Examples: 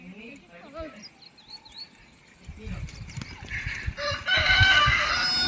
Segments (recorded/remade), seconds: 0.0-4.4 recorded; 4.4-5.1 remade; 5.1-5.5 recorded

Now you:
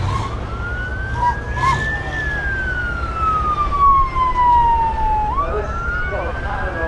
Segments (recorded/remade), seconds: 0.0-6.9 recorded

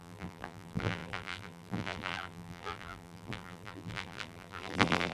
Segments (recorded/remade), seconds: 0.0-5.1 remade

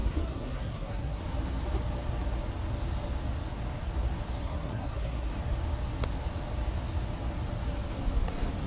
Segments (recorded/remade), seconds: 0.0-1.2 remade; 1.2-4.4 recorded; 4.4-5.3 remade; 5.3-8.7 recorded

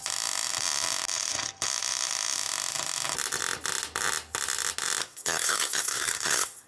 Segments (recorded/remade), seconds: 0.0-5.0 recorded; 5.0-6.7 remade